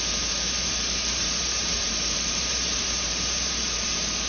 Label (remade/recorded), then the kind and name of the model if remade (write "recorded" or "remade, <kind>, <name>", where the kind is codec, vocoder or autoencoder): remade, vocoder, BigVGAN v2